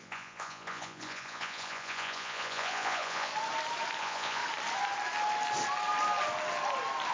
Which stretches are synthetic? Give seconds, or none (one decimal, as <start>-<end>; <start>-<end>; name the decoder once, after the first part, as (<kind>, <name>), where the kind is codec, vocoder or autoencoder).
0.0-3.3 (vocoder, Vocos); 4.0-4.4